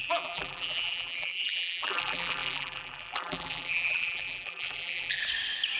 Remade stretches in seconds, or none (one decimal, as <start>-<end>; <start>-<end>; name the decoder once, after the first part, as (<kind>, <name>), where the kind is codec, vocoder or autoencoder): 0.0-5.2 (vocoder, BigVGAN v2)